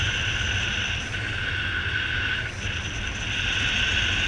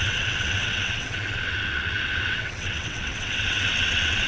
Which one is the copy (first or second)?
second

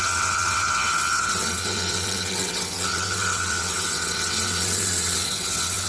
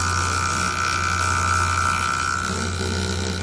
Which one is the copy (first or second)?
first